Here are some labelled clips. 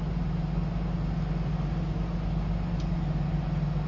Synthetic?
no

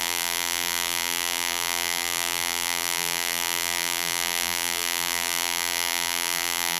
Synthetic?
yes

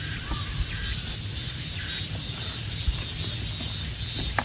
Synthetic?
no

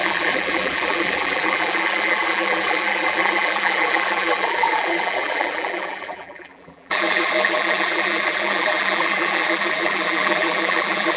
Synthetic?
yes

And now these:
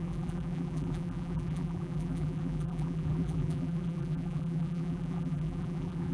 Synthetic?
yes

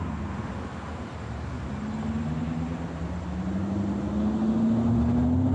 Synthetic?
no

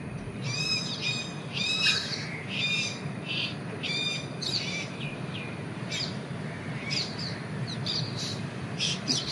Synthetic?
yes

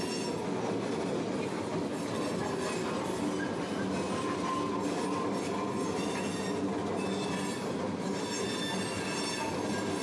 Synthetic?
no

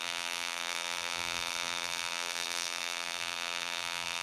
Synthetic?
yes